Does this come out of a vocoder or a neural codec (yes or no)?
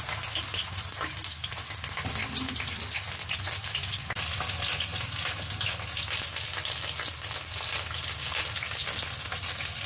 no